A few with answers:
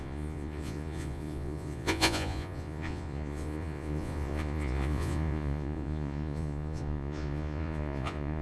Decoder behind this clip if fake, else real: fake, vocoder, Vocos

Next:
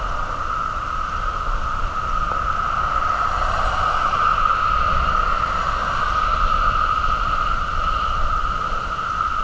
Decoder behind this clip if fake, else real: real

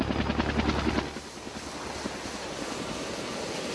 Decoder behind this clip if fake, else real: real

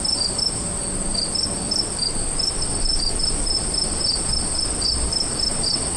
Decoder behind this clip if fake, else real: real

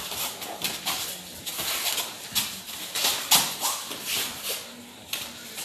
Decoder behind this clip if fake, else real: real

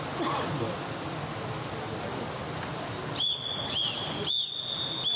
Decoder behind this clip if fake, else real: real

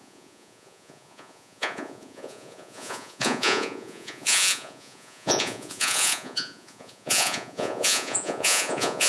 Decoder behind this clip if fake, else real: fake, vocoder, Vocos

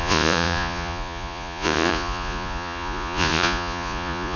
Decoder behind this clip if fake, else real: fake, vocoder, Vocos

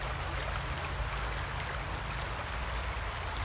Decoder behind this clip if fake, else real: real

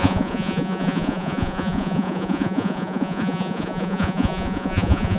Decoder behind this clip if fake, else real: fake, vocoder, Vocos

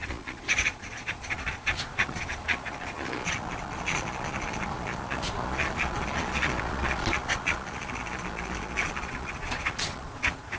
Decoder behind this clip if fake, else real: fake, vocoder, Vocos